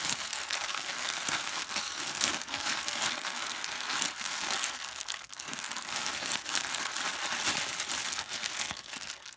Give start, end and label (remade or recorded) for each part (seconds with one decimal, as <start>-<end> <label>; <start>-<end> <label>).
0.0-6.9 remade; 6.9-8.1 recorded; 8.1-9.4 remade